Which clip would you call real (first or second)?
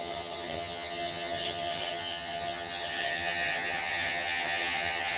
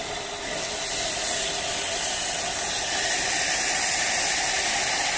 second